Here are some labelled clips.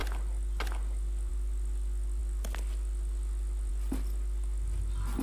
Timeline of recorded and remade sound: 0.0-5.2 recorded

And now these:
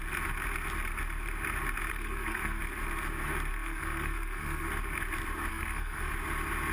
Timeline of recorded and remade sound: 0.0-1.9 recorded; 1.9-2.6 remade; 2.6-3.5 recorded; 3.5-4.7 remade; 4.7-5.5 recorded; 5.5-6.1 remade; 6.1-6.7 recorded

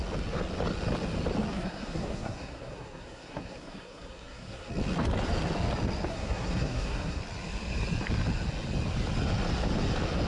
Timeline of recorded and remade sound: 0.0-1.5 recorded; 1.5-4.7 remade; 4.7-6.1 recorded; 6.1-7.2 remade; 7.2-10.3 recorded